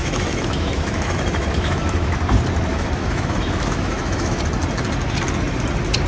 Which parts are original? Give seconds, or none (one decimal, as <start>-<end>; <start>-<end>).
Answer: 2.1-2.7; 4.4-6.1